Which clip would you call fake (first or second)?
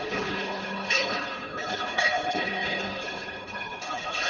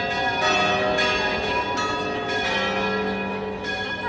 first